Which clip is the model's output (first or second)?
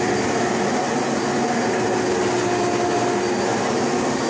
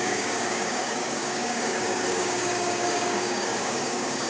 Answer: second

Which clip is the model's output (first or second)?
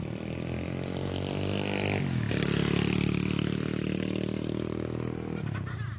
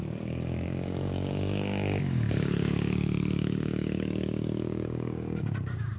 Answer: second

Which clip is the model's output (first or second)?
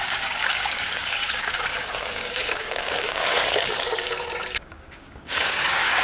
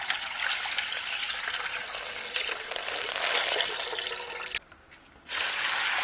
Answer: first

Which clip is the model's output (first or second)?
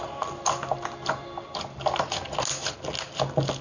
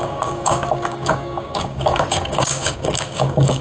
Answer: second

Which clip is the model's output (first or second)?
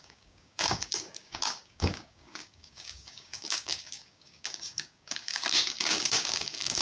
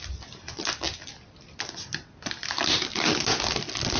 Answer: first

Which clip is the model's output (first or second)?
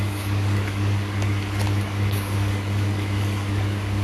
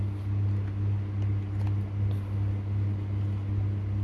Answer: first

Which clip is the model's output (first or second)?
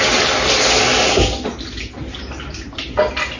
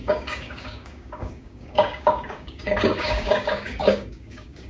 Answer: second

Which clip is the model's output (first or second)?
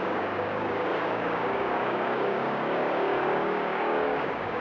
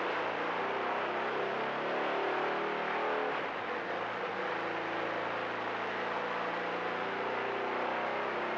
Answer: first